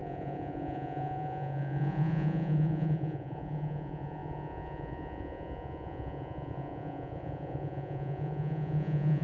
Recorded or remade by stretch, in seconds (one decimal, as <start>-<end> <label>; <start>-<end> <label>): 0.0-9.2 remade